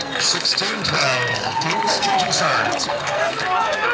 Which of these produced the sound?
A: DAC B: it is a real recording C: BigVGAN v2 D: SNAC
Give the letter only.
D